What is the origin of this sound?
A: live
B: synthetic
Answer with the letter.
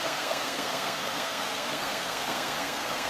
B